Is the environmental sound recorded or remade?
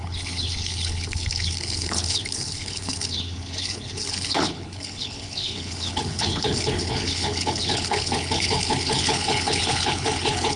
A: remade